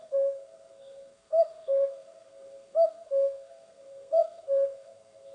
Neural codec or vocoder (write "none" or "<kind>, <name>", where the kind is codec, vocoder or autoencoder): codec, SNAC